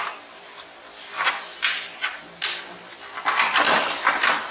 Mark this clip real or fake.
real